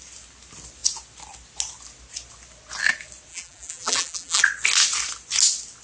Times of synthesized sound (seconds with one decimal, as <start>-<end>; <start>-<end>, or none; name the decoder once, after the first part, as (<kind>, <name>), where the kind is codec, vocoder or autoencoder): 3.3-4.4 (vocoder, BigVGAN v2)